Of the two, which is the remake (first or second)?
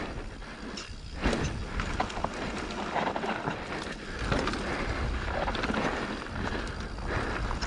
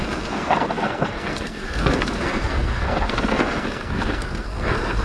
second